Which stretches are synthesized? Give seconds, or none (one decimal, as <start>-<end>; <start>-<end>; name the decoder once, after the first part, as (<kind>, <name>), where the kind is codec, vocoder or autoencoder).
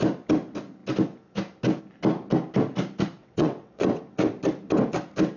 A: 3.2-4.0 (vocoder, WaveNeXt)